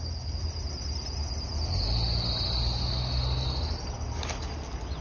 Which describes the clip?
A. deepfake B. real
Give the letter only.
B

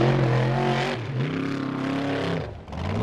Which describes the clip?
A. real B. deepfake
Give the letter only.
A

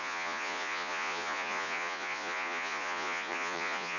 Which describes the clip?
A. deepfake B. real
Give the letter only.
A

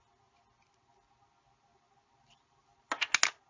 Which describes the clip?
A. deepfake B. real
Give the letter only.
B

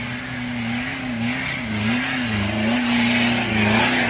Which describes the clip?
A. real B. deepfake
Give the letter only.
A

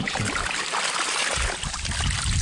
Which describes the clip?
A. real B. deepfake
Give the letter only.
A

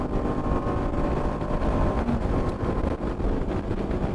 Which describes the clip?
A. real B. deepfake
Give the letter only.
A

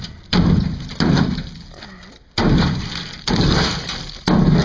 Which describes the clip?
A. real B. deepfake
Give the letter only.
A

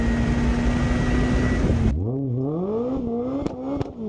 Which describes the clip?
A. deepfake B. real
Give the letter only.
B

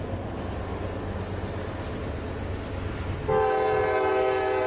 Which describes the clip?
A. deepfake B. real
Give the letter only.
B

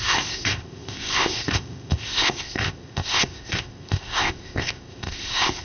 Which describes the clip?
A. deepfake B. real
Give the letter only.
A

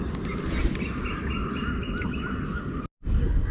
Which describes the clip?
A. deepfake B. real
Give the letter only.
B